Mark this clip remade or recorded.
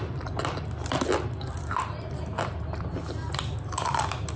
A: recorded